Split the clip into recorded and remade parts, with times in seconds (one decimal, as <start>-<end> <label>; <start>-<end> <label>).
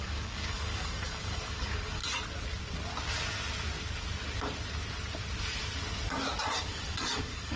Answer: 0.0-2.0 remade; 2.0-6.6 recorded; 6.6-7.6 remade